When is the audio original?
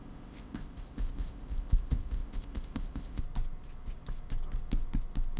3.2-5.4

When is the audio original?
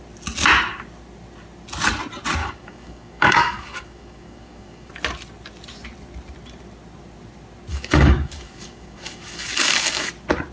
0.0-2.4; 4.9-7.7; 10.1-10.5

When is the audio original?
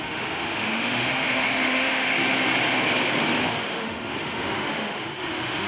2.2-3.2